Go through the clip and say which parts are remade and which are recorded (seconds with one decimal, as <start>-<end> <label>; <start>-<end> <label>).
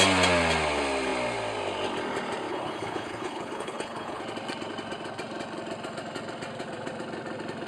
0.0-2.5 recorded; 2.5-4.2 remade; 4.2-7.7 recorded